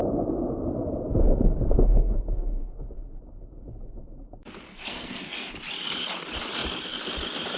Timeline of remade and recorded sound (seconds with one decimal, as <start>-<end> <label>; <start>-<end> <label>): 0.0-1.9 recorded; 1.9-2.8 remade; 2.8-4.7 recorded; 4.7-5.5 remade; 5.5-7.6 recorded